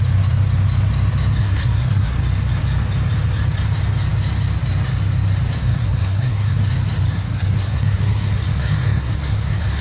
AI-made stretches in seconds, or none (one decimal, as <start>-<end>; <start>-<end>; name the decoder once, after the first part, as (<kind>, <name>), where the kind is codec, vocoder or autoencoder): 1.4-2.2 (codec, SNAC); 5.6-6.6; 7.1-9.8